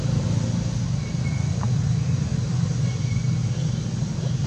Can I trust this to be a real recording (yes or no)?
yes